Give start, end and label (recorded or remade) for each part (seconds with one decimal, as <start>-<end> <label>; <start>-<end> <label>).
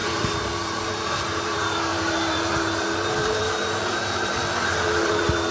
0.0-5.5 remade